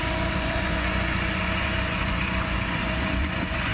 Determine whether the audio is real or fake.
fake